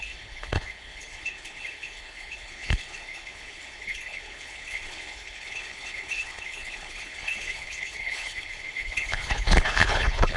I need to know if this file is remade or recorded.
remade